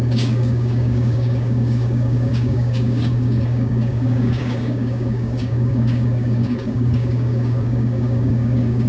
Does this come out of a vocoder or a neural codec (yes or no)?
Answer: yes